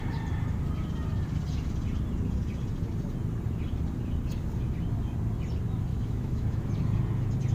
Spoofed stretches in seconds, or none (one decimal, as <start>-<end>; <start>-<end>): 5.9-6.7

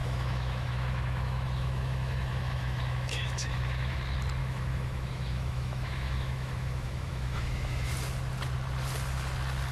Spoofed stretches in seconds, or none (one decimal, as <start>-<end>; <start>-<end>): 0.0-4.0; 4.4-7.9

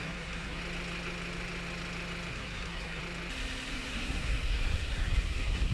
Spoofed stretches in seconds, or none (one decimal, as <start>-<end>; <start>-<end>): 0.0-0.6; 2.3-3.0; 3.7-5.7